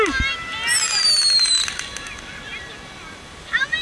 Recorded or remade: recorded